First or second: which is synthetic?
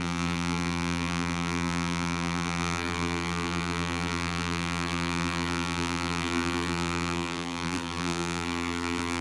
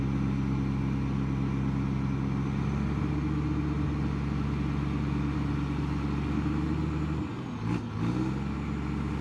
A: first